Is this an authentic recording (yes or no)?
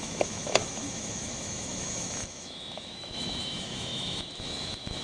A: no